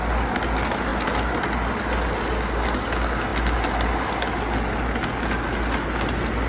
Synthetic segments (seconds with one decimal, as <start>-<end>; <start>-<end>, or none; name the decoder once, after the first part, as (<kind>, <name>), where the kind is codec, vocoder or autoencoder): none